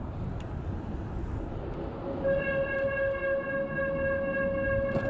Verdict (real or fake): real